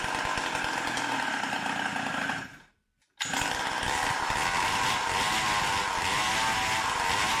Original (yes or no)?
yes